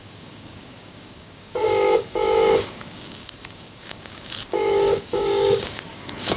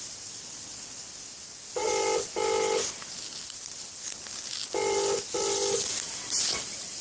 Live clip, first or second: second